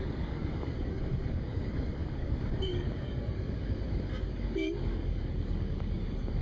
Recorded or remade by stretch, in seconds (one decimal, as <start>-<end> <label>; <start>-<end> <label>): 0.0-6.4 remade

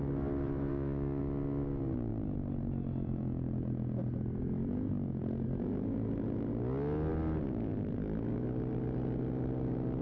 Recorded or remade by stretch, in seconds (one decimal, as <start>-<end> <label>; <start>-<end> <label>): 0.0-0.7 recorded; 0.7-1.2 remade; 1.2-10.0 recorded